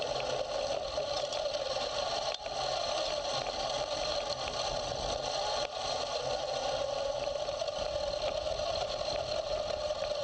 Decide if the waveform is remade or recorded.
recorded